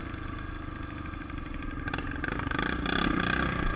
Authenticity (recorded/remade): recorded